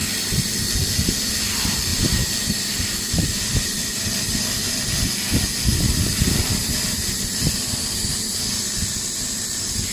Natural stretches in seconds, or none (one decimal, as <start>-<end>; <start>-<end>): 0.0-1.9; 4.9-5.7; 8.0-9.9